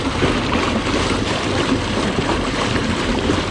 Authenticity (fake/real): real